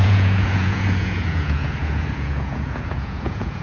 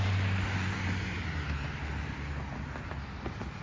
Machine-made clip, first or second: first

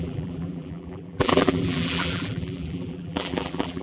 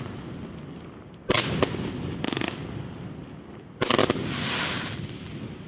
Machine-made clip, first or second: first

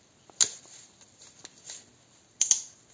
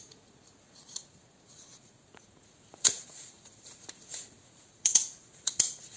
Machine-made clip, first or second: second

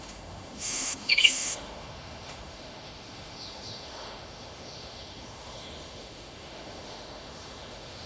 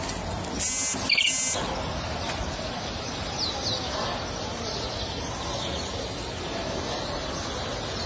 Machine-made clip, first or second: first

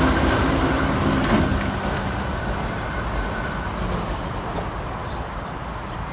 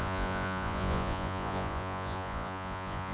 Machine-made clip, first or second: second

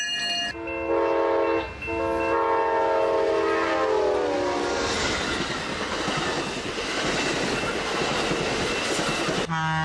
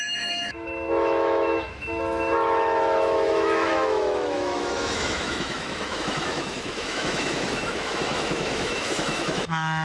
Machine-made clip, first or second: second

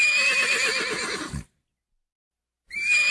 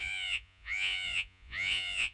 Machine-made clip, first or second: second